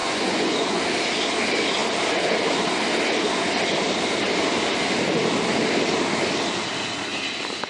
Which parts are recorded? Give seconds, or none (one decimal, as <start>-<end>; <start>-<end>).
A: 0.8-7.7